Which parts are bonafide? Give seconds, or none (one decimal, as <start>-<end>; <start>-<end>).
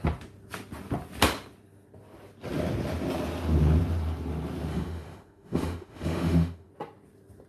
0.0-4.7; 6.7-7.5